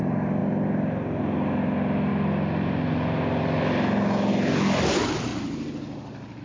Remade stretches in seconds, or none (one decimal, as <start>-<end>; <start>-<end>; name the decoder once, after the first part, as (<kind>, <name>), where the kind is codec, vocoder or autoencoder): none